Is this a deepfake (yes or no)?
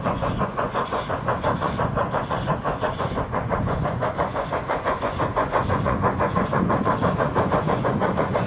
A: yes